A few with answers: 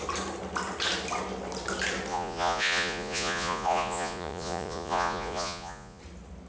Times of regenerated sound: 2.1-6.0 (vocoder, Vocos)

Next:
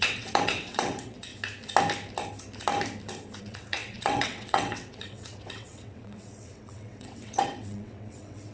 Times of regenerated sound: 0.0-1.3 (vocoder, WaveNeXt); 3.4-8.5

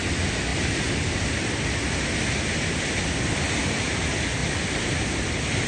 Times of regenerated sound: none